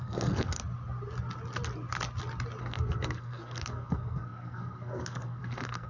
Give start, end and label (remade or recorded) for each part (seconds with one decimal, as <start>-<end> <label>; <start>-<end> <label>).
0.0-0.6 remade; 0.6-2.6 recorded; 2.6-5.9 remade